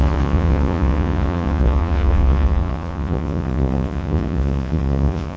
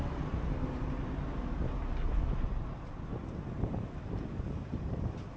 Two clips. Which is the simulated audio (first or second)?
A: first